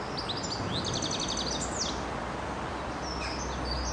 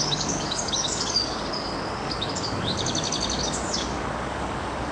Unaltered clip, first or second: first